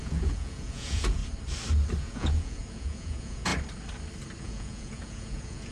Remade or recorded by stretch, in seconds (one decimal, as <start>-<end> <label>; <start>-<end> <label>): 0.0-1.2 remade; 1.2-2.0 recorded; 2.0-3.5 remade; 3.5-4.4 recorded; 4.4-5.7 remade